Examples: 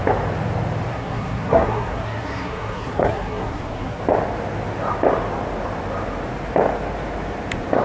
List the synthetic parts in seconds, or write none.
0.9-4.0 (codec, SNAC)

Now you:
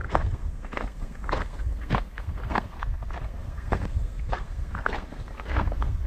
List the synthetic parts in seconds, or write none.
0.0-6.1 (codec, SNAC)